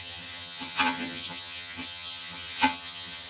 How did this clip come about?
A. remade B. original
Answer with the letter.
A